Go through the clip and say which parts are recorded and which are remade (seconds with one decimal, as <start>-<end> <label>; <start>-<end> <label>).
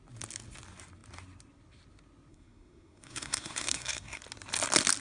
0.0-2.3 recorded; 2.3-4.2 remade; 4.2-5.0 recorded